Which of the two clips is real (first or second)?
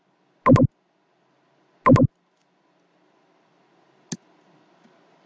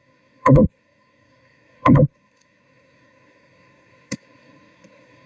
first